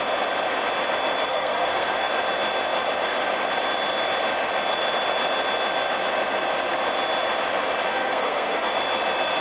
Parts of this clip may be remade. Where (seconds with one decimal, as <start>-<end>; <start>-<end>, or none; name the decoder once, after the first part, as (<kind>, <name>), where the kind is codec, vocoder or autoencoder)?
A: 1.3-2.1 (codec, SNAC); 7.9-8.7